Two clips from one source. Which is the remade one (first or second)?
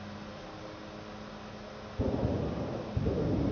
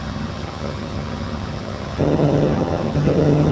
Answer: second